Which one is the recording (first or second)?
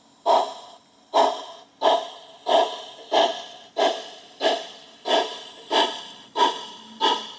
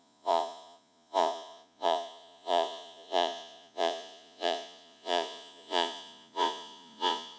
first